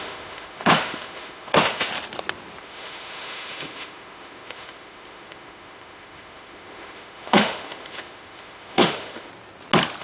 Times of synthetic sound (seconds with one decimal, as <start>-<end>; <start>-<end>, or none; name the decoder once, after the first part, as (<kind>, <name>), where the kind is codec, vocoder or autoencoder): 0.0-1.9 (autoencoder, DAC-VAE); 2.6-9.3